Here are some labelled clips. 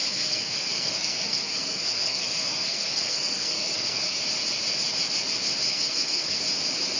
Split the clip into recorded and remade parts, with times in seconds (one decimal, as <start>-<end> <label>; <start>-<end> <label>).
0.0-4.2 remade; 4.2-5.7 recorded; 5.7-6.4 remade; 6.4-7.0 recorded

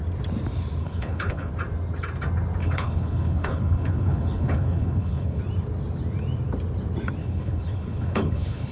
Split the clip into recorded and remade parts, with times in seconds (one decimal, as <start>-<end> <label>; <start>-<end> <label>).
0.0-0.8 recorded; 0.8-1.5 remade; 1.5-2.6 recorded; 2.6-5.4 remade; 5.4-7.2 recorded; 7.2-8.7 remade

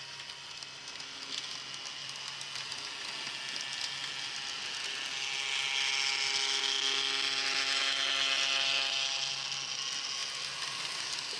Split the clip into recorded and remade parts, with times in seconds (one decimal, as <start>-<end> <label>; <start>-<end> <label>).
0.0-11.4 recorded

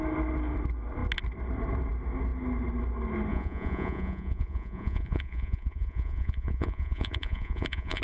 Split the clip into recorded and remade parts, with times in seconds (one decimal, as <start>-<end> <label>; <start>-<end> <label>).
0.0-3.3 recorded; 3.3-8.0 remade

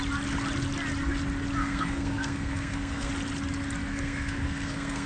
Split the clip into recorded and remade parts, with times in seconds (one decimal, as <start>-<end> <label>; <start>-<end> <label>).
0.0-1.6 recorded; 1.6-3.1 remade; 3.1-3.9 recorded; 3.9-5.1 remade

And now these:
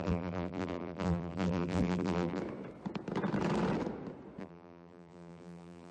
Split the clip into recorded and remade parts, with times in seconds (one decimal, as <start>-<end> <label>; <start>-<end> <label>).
0.0-2.4 remade; 2.4-4.4 recorded; 4.4-5.9 remade

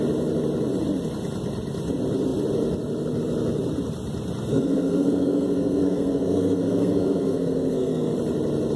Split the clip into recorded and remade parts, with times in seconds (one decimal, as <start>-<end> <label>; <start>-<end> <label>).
0.0-4.5 recorded; 4.5-8.1 remade; 8.1-8.8 recorded